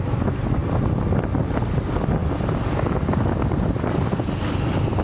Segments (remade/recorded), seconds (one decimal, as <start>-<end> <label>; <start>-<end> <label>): 0.0-5.0 recorded